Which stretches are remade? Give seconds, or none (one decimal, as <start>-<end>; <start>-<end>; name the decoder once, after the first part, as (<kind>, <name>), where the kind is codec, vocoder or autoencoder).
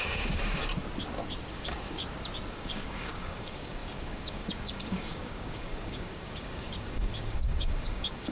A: 0.0-0.6 (codec, DAC); 1.5-2.0; 2.5-8.3